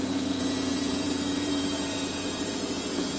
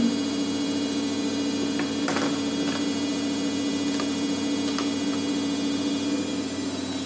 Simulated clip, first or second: first